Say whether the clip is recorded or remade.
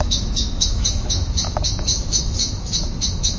remade